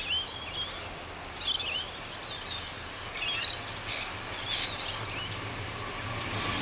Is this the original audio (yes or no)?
yes